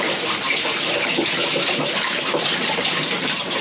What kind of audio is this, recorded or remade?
remade